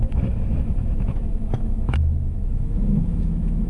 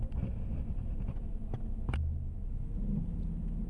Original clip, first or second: second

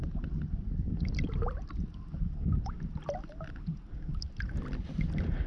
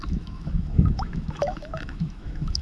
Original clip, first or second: first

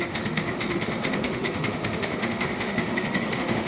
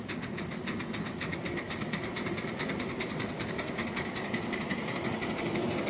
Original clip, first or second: second